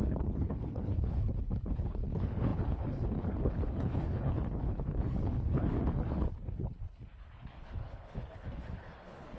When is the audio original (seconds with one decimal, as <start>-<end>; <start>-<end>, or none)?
none